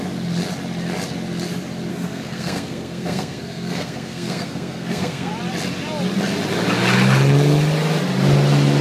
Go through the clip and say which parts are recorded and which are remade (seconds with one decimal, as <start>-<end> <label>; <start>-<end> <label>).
0.0-1.9 recorded; 1.9-5.3 remade; 5.3-8.8 recorded

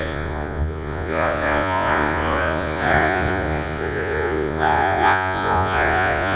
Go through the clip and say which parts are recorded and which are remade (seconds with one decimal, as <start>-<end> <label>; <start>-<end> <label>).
0.0-6.4 remade

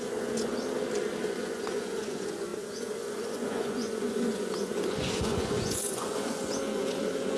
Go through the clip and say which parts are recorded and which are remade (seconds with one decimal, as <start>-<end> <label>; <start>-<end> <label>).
0.0-0.5 remade; 0.5-1.2 recorded; 1.2-7.4 remade

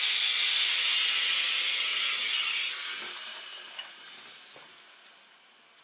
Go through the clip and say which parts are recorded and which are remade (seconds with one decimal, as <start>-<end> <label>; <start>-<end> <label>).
0.0-5.8 recorded

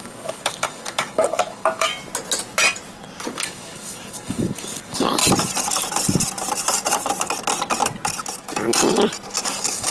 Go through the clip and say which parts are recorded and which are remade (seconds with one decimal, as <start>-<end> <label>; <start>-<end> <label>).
0.0-1.9 remade; 1.9-3.2 recorded; 3.2-5.2 remade; 5.2-9.4 recorded; 9.4-9.9 remade

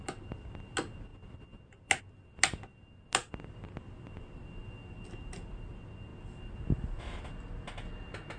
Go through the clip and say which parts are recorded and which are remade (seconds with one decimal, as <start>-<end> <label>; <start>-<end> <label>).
0.0-8.4 recorded